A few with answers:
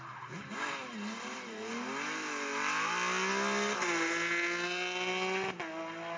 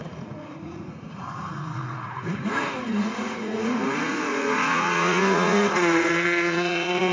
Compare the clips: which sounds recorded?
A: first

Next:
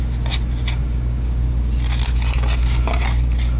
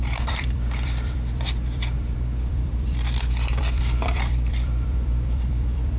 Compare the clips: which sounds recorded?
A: first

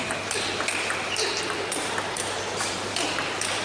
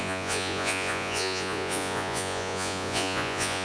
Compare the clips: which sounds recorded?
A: first